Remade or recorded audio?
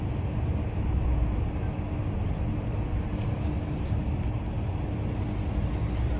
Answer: recorded